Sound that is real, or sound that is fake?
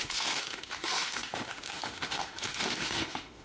fake